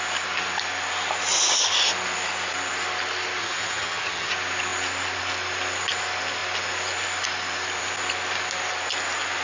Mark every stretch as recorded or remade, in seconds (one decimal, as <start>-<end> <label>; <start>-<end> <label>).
0.0-3.4 recorded; 3.4-4.3 remade; 4.3-9.4 recorded